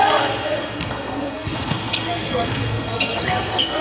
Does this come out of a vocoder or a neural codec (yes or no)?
yes